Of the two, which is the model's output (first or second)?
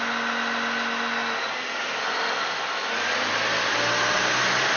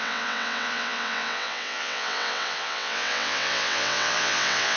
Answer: second